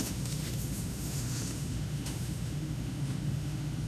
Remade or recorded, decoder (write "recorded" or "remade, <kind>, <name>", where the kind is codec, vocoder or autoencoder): remade, autoencoder, DAC-VAE